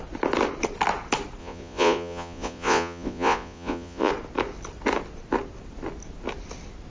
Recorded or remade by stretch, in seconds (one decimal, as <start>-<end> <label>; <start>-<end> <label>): 0.0-1.4 recorded; 1.4-4.1 remade; 4.1-6.9 recorded